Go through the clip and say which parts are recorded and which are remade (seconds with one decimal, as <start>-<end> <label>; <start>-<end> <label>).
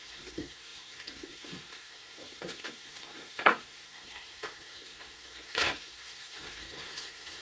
0.0-7.4 remade